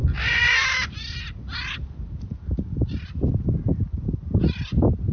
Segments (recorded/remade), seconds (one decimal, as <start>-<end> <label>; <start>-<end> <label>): 0.0-5.1 recorded